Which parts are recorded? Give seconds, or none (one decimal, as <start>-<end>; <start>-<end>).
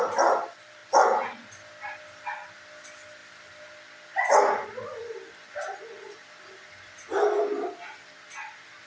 0.0-8.9